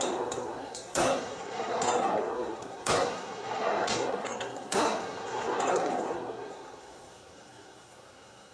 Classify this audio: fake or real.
fake